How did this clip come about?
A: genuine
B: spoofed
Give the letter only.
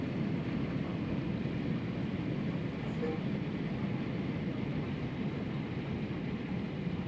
A